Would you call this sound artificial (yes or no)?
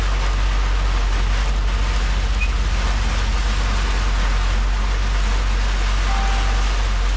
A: no